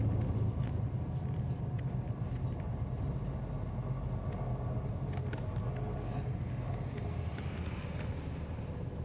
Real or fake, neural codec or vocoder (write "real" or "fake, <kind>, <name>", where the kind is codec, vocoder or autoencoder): real